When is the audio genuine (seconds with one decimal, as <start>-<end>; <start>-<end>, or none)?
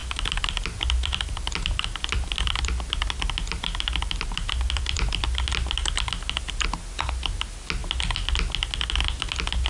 5.1-9.7